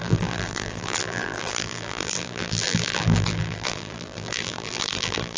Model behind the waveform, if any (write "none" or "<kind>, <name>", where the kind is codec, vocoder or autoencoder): vocoder, BigVGAN v2